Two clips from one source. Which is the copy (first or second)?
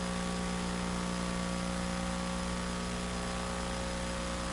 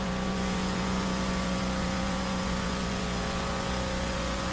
second